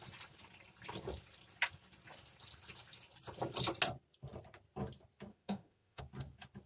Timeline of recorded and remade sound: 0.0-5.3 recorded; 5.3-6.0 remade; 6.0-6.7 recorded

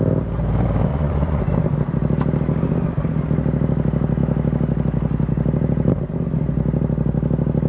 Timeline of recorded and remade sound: 0.0-0.9 recorded; 0.9-1.4 remade; 1.4-7.7 recorded

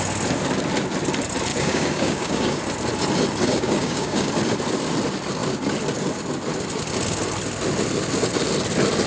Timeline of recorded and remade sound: 0.0-1.5 recorded; 1.5-2.6 remade; 2.6-3.4 recorded; 3.4-4.3 remade; 4.3-9.1 recorded

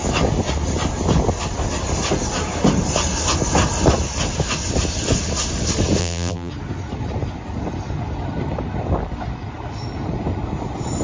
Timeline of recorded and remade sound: 0.0-6.0 recorded; 6.0-6.5 remade; 6.5-11.0 recorded

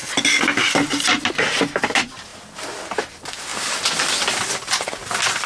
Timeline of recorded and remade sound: 0.0-5.5 recorded

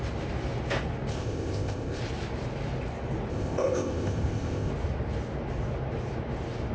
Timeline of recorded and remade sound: 0.0-1.1 recorded; 1.1-2.0 remade; 2.0-3.3 recorded; 3.3-4.7 remade; 4.7-6.7 recorded

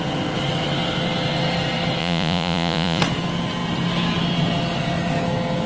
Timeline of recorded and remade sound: 0.0-2.0 recorded; 2.0-3.0 remade; 3.0-5.7 recorded